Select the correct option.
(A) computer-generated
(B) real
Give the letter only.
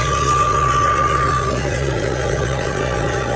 A